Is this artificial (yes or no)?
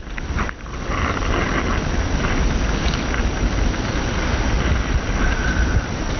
no